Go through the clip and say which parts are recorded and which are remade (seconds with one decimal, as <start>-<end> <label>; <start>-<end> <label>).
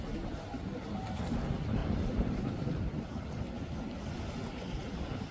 0.0-1.8 recorded; 1.8-3.5 remade; 3.5-5.3 recorded